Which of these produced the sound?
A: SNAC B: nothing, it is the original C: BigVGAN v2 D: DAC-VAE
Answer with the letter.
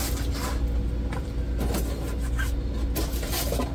B